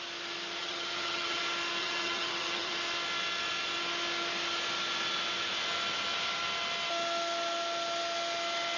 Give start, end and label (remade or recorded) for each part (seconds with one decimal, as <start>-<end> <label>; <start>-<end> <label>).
0.0-0.6 recorded; 0.6-1.4 remade; 1.4-1.8 recorded; 1.8-2.7 remade; 2.7-8.8 recorded